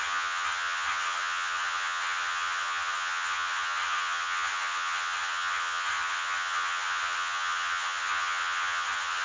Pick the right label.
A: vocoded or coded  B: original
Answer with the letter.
A